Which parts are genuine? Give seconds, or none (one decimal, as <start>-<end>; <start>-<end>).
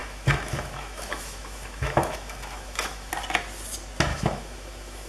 3.1-4.1